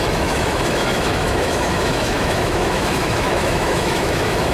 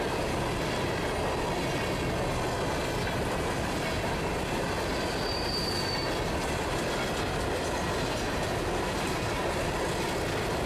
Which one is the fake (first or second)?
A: first